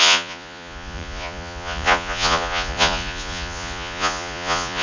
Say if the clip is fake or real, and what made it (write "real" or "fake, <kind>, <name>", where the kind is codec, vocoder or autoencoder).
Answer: fake, vocoder, Vocos